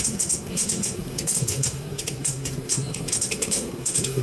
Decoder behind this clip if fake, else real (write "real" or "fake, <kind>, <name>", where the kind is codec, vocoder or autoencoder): fake, codec, SNAC